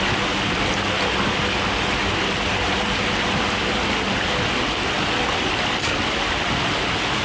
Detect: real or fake real